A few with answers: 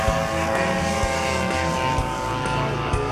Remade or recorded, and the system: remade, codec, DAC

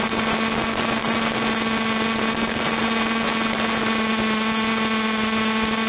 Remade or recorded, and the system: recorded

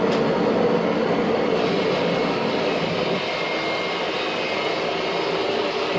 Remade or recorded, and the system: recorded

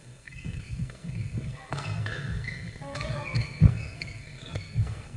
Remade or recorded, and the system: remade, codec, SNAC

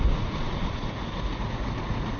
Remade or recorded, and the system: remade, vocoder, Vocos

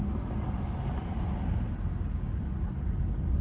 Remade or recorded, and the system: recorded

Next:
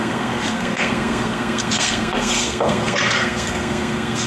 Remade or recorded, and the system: remade, codec, SNAC